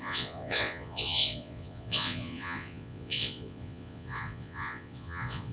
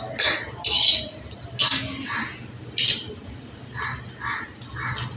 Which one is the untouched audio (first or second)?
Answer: second